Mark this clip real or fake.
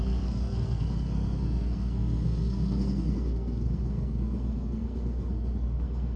fake